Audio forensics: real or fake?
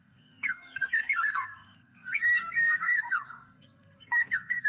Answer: fake